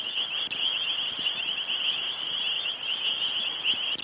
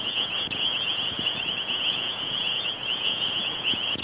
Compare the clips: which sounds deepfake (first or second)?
second